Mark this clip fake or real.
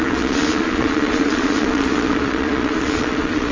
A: fake